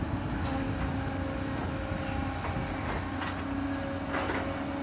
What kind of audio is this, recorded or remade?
recorded